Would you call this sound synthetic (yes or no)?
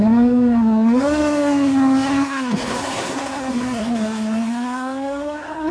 yes